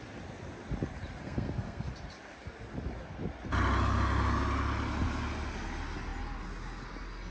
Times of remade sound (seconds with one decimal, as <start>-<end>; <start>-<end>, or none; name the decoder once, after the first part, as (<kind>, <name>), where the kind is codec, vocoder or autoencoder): 1.2-1.9 (codec, SNAC)